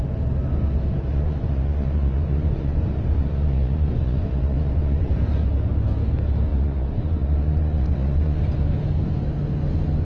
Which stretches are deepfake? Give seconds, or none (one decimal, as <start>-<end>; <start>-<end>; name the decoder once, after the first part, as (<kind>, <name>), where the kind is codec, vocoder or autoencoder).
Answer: 1.1-5.1 (vocoder, Vocos); 6.5-8.4